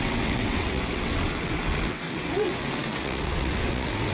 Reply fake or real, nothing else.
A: fake